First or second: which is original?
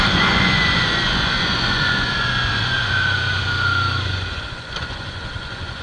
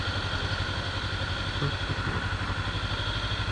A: second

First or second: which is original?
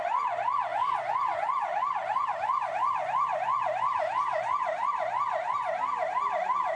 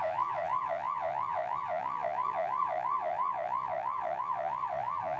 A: first